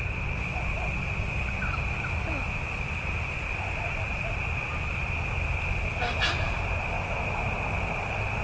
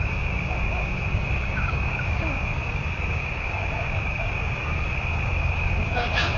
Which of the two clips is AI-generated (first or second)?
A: second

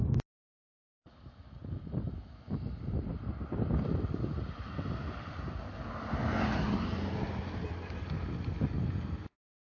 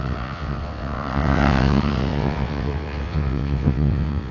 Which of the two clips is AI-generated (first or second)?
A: second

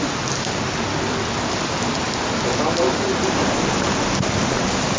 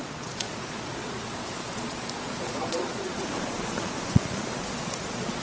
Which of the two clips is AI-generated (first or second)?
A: second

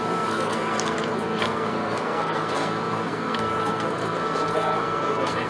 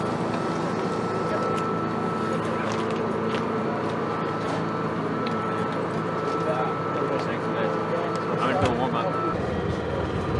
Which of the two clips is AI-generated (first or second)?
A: first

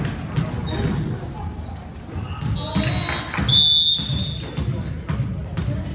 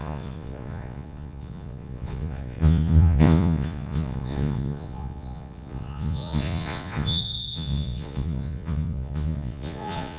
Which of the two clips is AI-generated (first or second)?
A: second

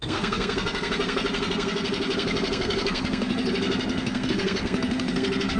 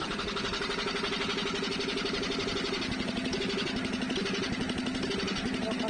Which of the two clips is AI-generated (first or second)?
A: first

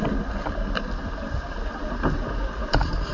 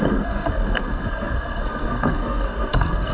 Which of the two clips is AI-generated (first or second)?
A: second